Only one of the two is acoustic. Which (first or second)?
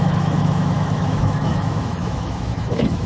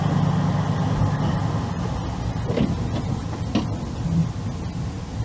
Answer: second